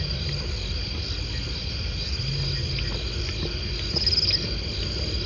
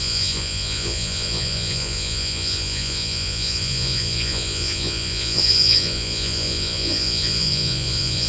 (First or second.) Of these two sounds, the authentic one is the first